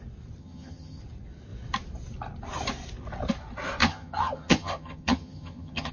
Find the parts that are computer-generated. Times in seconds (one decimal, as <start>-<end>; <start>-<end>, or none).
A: 0.4-1.0; 3.8-5.9